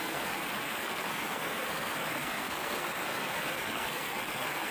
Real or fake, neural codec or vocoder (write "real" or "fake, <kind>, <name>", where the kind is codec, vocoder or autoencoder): fake, codec, SNAC